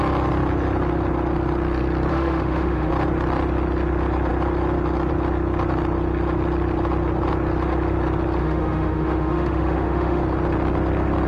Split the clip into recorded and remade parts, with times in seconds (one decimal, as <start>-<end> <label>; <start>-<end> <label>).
0.0-2.1 recorded; 2.1-2.9 remade; 2.9-8.4 recorded; 8.4-10.2 remade; 10.2-11.3 recorded